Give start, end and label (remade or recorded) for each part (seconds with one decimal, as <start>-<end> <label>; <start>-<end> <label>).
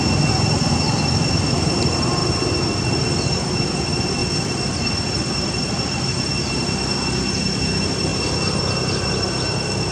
0.0-9.9 recorded